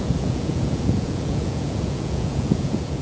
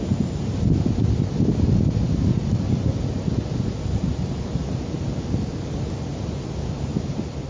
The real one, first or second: second